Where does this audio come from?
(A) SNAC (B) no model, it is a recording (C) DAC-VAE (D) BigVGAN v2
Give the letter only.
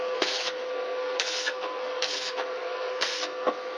A